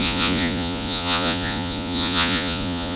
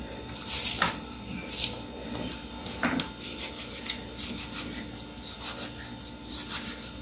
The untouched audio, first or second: second